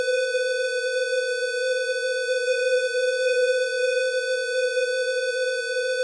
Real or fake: fake